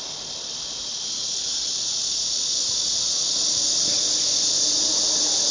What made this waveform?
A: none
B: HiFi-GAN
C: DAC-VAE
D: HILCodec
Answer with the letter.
A